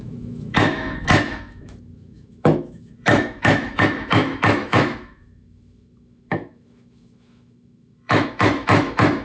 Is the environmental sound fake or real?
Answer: fake